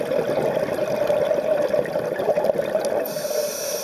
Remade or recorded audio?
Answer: recorded